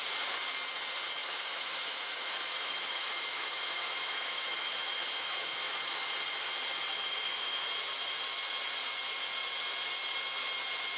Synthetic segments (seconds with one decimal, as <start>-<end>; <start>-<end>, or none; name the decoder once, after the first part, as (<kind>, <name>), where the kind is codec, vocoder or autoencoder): 1.2-6.1 (autoencoder, DAC-VAE); 6.9-7.6